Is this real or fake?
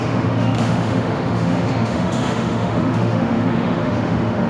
fake